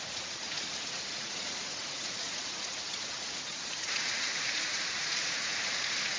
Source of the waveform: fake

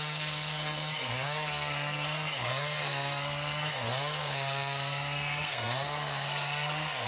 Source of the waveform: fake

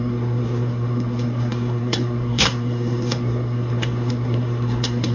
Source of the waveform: fake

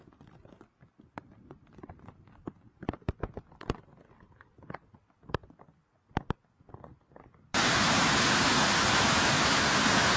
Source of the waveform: fake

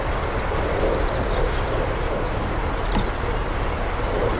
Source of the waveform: real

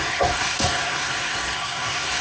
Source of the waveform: fake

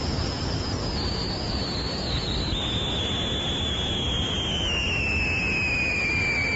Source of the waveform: real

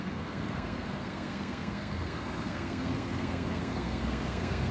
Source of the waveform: fake